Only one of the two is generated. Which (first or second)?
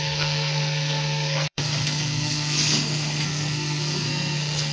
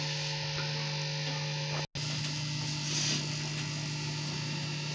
first